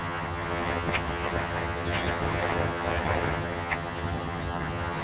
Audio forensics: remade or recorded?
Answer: remade